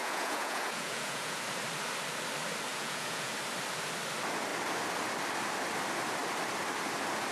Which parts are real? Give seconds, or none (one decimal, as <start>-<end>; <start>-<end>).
1.4-2.7; 3.3-7.3